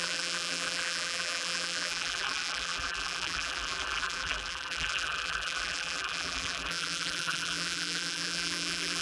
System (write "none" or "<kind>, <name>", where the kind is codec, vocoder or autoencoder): vocoder, BigVGAN v2